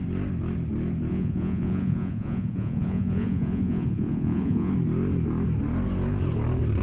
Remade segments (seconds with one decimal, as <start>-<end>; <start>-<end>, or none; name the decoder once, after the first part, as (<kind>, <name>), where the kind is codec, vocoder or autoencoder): 1.1-4.7 (vocoder, Vocos)